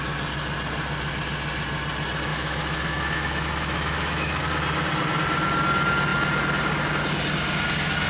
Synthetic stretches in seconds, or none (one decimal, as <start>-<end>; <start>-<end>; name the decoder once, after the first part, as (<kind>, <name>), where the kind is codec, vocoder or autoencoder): 2.3-4.4 (autoencoder, DAC-VAE)

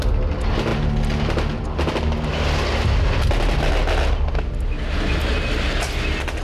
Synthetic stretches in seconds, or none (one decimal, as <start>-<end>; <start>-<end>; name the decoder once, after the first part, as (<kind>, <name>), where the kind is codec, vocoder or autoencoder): none